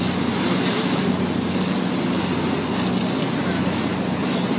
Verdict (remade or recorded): recorded